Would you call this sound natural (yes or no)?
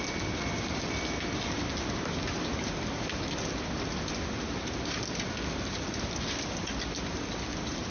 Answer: yes